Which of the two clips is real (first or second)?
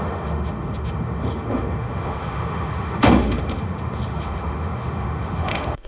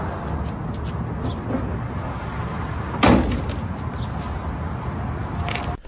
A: second